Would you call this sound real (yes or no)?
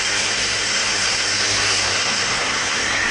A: no